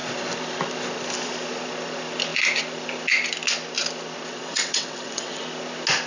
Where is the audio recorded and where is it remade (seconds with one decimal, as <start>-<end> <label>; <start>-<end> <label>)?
0.0-4.3 recorded; 4.3-5.4 remade; 5.4-6.1 recorded